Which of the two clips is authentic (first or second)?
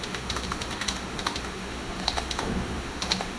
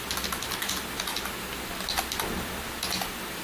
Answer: second